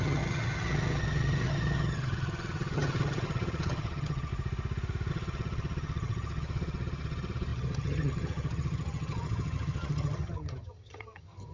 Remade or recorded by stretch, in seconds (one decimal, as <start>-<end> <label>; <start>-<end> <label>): 0.0-4.3 remade; 4.3-5.1 recorded; 5.1-11.5 remade